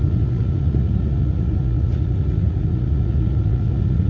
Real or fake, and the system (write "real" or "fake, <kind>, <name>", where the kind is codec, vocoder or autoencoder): fake, vocoder, Vocos